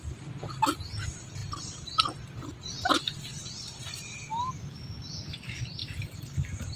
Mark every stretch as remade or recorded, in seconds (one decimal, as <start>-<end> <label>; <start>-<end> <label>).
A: 0.0-6.8 recorded